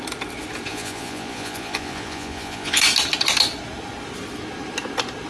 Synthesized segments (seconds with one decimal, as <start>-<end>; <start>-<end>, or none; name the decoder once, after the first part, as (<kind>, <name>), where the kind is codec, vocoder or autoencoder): 0.7-2.8 (vocoder, Vocos)